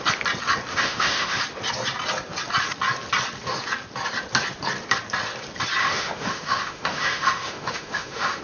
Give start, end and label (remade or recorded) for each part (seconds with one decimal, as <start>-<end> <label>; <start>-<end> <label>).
0.0-0.7 recorded; 0.7-1.4 remade; 1.4-5.8 recorded; 5.8-8.4 remade